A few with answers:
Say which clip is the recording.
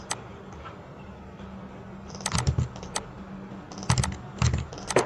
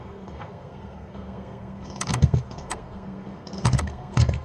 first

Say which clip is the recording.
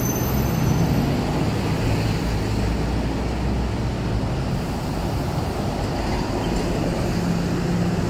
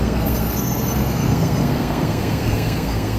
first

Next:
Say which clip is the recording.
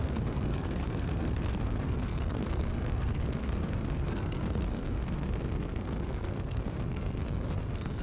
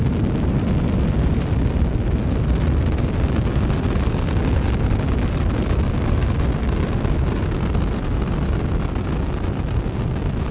second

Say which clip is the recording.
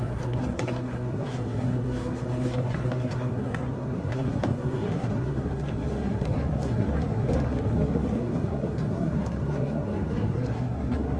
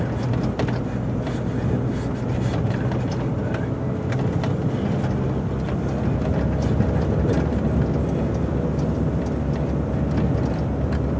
second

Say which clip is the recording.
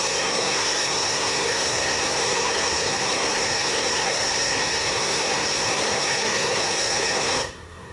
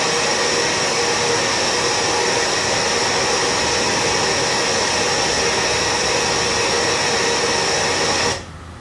second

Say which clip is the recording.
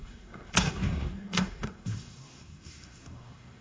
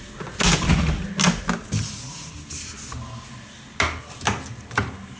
second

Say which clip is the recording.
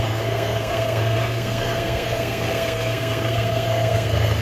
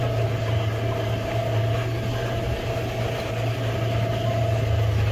second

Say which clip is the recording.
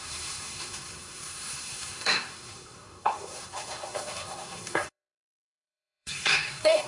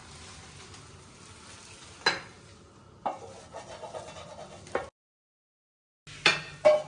second